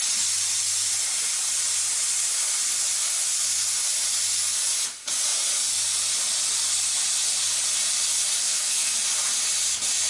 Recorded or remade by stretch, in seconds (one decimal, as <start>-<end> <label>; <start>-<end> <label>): 0.0-8.4 recorded; 8.4-9.0 remade; 9.0-10.1 recorded